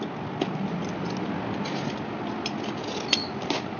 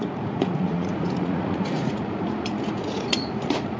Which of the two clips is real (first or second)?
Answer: first